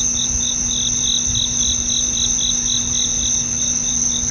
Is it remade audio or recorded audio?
recorded